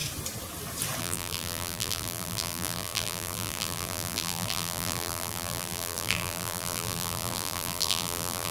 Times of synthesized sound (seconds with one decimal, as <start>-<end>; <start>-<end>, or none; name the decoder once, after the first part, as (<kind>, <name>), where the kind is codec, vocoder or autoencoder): 1.0-8.5 (vocoder, BigVGAN v2)